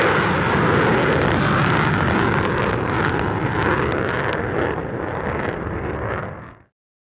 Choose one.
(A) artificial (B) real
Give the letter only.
B